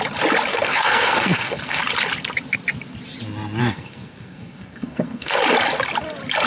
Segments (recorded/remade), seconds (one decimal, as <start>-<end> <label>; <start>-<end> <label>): 0.0-0.5 recorded; 0.5-1.8 remade; 1.8-3.6 recorded; 3.6-5.4 remade; 5.4-6.5 recorded